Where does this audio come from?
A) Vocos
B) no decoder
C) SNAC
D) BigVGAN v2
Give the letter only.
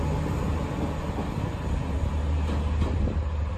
B